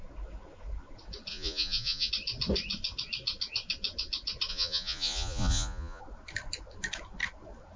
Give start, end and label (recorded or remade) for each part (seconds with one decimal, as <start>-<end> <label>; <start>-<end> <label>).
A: 0.0-1.3 recorded; 1.3-2.1 remade; 2.1-4.5 recorded; 4.5-6.0 remade; 6.0-7.8 recorded

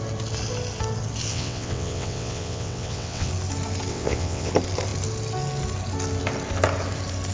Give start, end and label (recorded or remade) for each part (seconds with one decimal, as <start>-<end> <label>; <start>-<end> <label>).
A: 0.0-1.3 recorded; 1.3-3.3 remade; 3.3-3.9 recorded; 3.9-4.5 remade; 4.5-7.3 recorded

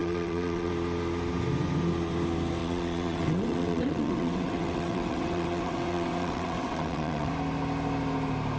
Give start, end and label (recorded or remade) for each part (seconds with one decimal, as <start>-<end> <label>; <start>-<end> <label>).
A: 0.0-0.7 remade; 0.7-2.6 recorded; 2.6-7.3 remade; 7.3-8.6 recorded